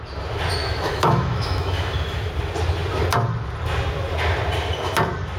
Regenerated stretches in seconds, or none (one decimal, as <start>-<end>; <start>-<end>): 0.6-2.3